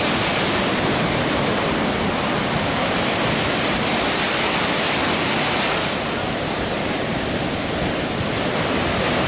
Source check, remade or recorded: recorded